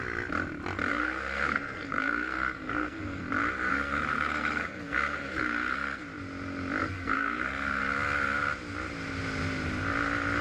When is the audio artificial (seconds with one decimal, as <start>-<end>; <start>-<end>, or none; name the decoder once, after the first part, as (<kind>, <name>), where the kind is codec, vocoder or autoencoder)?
0.9-3.2 (codec, SNAC); 3.7-6.0; 6.8-7.8